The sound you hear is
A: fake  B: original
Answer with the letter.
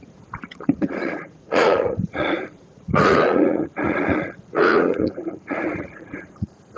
A